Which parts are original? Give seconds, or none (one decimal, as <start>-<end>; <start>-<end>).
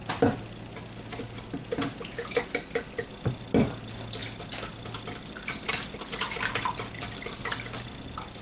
0.0-1.6; 2.4-8.4